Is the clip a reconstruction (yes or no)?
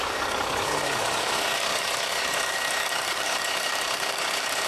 yes